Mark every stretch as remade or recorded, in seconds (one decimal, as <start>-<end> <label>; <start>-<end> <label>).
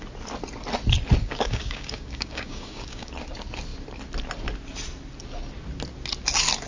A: 0.0-1.2 recorded; 1.2-3.1 remade; 3.1-6.7 recorded